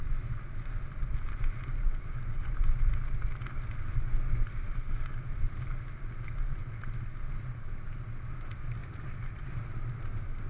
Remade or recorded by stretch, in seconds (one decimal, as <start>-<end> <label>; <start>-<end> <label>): 0.0-10.5 recorded